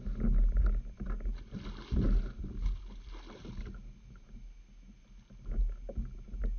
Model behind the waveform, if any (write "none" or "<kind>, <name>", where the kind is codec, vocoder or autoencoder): none